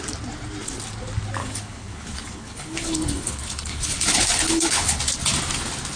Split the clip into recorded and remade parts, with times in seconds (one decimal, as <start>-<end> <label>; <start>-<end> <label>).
0.0-1.4 recorded; 1.4-5.0 remade; 5.0-6.0 recorded